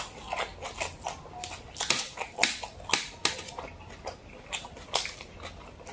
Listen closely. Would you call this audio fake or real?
real